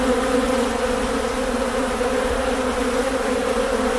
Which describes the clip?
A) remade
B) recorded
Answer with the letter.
B